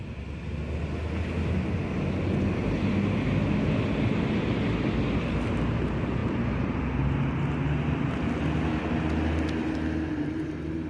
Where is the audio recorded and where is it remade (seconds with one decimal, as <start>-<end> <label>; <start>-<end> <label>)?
0.0-6.2 recorded; 6.2-6.8 remade; 6.8-10.9 recorded